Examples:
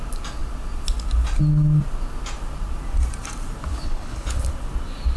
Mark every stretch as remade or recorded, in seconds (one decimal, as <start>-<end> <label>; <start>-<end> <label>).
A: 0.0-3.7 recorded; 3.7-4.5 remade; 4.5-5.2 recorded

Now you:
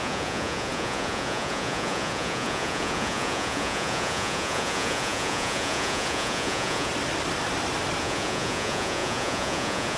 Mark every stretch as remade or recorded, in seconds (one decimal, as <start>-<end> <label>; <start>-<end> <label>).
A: 0.0-6.9 remade; 6.9-8.0 recorded; 8.0-10.0 remade

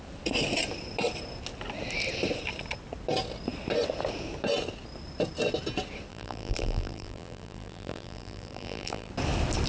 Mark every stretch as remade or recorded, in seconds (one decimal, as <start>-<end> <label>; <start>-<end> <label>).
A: 0.0-6.1 recorded; 6.1-9.1 remade; 9.1-9.7 recorded

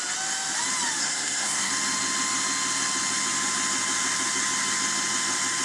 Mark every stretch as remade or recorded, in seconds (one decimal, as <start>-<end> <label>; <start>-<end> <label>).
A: 0.0-1.0 recorded; 1.0-1.7 remade; 1.7-5.6 recorded